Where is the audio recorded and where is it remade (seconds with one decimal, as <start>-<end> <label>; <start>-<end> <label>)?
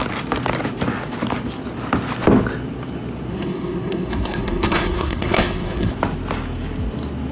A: 0.0-3.3 recorded; 3.3-5.9 remade; 5.9-7.3 recorded